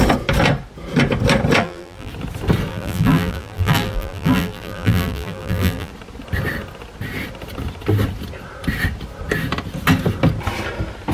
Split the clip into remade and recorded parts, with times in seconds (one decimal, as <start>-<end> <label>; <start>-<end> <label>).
0.0-1.6 recorded; 1.6-2.1 remade; 2.1-2.7 recorded; 2.7-5.9 remade; 5.9-11.1 recorded